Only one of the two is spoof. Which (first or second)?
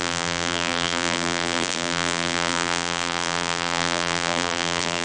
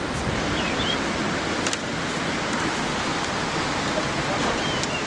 first